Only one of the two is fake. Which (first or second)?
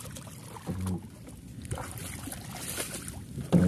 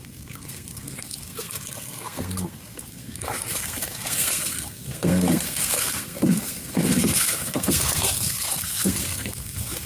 second